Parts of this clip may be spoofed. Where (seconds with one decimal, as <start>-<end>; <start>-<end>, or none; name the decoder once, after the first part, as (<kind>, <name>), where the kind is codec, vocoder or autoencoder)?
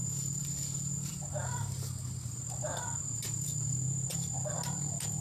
none